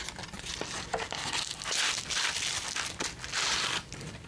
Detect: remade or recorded recorded